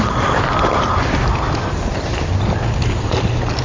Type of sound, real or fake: real